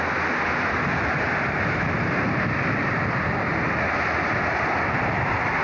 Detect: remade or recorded recorded